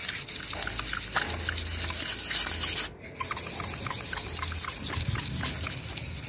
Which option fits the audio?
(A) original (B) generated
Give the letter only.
A